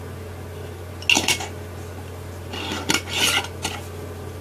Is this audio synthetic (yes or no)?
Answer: no